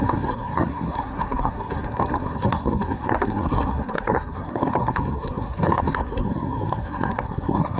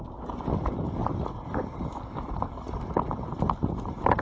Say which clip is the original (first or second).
second